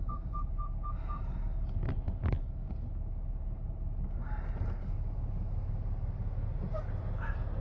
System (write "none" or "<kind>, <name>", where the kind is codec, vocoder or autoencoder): none